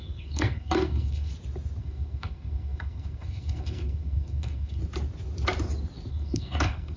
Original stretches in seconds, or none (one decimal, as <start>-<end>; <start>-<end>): 1.3-1.8; 4.8-6.1